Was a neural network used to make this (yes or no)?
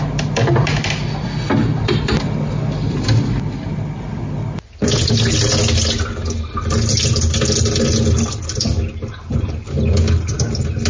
no